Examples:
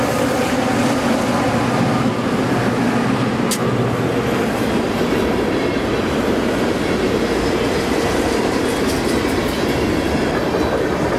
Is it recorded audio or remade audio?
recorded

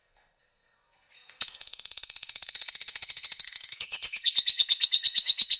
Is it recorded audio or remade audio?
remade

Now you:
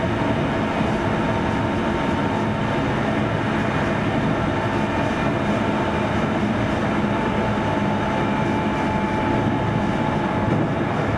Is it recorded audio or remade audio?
recorded